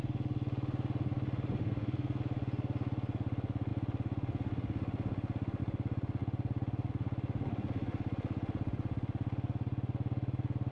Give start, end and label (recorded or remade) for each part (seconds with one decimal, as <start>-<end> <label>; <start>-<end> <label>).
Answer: 0.0-1.6 recorded; 1.6-2.2 remade; 2.2-10.7 recorded